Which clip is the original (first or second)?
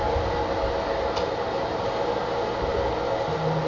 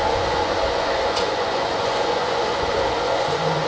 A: first